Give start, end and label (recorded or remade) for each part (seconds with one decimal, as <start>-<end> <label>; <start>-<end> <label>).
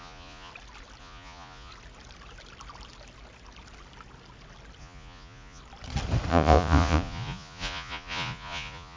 0.0-0.5 remade; 0.5-1.0 recorded; 1.0-1.7 remade; 1.7-4.8 recorded; 4.8-5.6 remade; 5.6-6.3 recorded; 6.3-9.0 remade